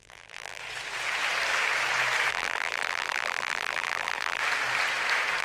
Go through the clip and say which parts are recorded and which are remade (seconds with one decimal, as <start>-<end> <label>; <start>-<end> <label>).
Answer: 0.0-0.6 remade; 0.6-2.3 recorded; 2.3-4.4 remade; 4.4-5.4 recorded